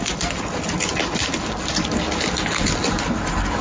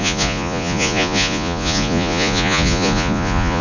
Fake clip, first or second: second